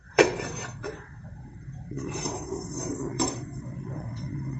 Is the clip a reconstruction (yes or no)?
yes